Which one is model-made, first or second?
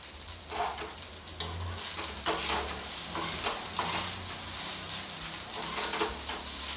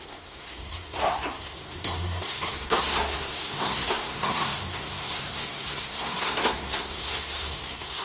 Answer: second